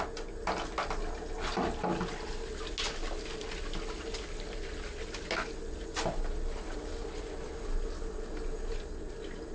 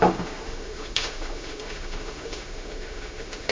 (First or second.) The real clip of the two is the first